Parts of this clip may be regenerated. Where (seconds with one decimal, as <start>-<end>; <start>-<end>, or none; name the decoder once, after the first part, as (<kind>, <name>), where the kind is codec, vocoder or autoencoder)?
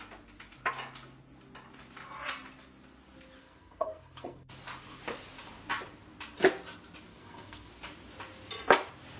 3.4-4.5 (codec, SNAC); 7.1-7.7